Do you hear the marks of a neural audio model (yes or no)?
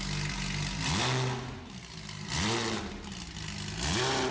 no